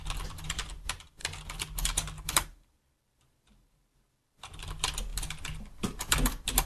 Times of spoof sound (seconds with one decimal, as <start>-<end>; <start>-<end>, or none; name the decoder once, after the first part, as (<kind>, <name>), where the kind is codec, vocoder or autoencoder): none